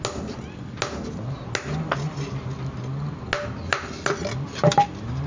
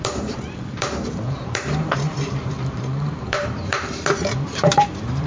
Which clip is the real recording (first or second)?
first